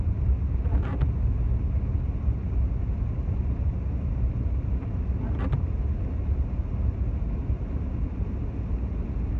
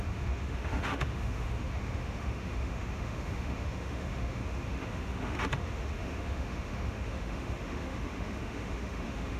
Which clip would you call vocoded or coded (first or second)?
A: second